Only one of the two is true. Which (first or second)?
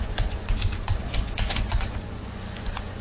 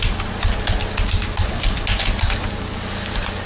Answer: second